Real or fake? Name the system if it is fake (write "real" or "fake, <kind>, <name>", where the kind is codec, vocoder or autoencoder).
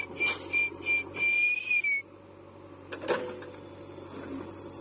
real